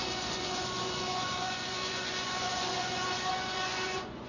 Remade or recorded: remade